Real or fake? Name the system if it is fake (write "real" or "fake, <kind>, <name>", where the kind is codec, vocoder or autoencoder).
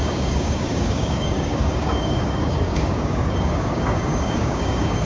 fake, codec, DAC